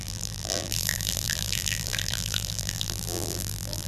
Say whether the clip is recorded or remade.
remade